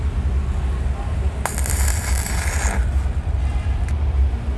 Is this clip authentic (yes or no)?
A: yes